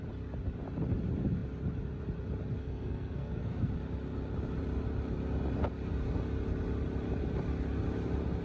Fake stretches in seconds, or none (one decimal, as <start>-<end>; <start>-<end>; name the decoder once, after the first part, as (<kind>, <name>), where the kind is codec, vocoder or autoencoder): 2.6-3.7 (codec, SNAC)